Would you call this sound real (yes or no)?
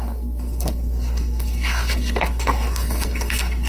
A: no